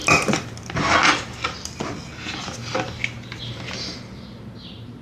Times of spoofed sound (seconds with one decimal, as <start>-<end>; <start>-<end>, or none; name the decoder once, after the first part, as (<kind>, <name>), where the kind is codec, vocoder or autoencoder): 0.0-0.8 (vocoder, BigVGAN v2)